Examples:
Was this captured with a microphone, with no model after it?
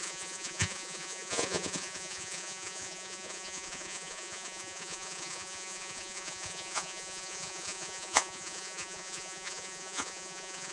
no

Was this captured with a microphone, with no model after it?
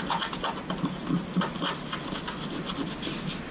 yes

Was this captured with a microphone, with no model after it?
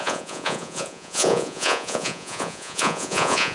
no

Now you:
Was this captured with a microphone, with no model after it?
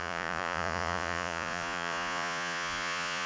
no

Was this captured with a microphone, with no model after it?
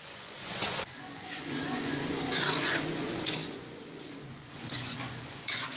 no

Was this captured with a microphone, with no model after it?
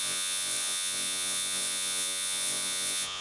no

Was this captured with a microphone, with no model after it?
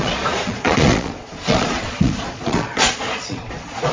no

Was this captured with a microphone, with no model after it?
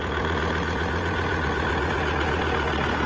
no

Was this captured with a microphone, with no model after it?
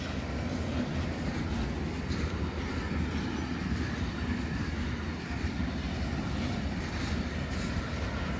yes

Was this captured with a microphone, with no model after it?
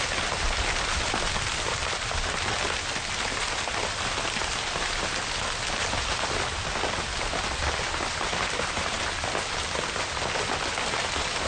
yes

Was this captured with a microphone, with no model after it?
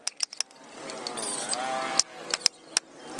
yes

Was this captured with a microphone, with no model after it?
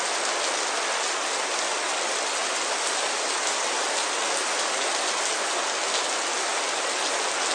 yes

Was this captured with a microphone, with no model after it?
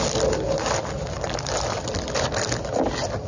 yes